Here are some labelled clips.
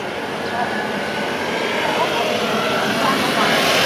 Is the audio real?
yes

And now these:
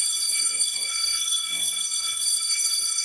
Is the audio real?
no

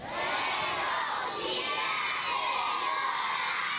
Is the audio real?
yes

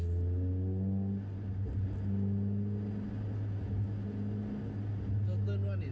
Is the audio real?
yes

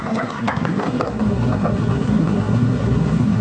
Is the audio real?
no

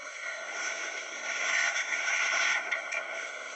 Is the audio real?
no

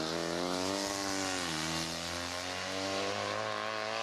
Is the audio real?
yes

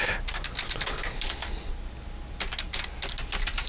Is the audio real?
yes